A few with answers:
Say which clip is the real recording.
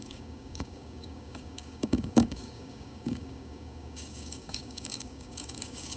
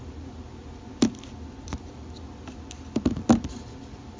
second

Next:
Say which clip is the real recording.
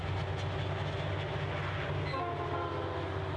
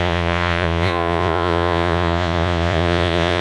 first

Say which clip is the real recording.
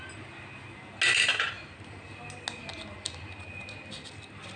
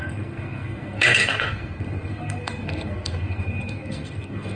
first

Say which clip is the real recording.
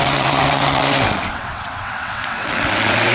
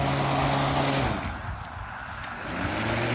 second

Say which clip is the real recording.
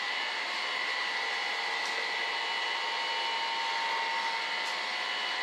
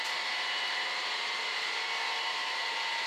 first